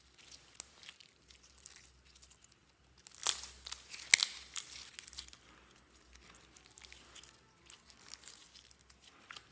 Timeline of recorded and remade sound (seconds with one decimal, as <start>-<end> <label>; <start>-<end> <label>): 0.0-9.5 recorded